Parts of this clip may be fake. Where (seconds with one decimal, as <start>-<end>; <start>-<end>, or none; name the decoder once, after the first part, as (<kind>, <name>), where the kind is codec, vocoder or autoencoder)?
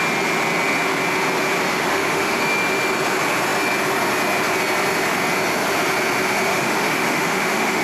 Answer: 1.7-2.4 (autoencoder, DAC-VAE); 6.5-7.8